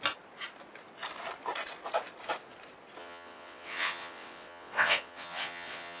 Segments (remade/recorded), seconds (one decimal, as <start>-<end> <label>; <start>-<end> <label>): 0.0-3.0 recorded; 3.0-6.0 remade